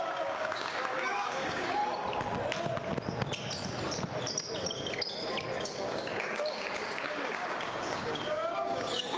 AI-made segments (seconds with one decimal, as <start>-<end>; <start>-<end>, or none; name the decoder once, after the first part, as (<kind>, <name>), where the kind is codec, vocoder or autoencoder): 0.0-1.8 (codec, DAC); 5.6-9.2